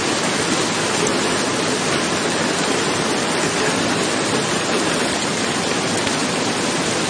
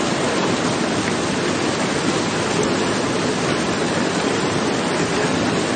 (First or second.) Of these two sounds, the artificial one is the second